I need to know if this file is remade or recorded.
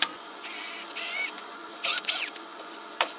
remade